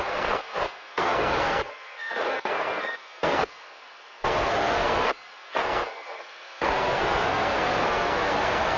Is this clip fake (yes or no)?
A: yes